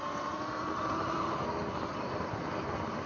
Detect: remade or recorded recorded